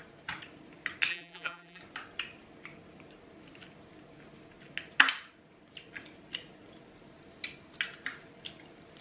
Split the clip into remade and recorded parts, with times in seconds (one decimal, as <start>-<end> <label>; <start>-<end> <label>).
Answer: 0.0-1.1 recorded; 1.1-1.8 remade; 1.8-9.0 recorded